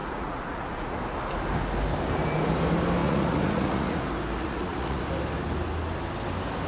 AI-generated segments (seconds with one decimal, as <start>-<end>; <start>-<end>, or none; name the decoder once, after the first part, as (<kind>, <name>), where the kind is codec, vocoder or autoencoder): 0.0-1.0 (vocoder, Vocos); 3.0-4.0; 4.4-5.0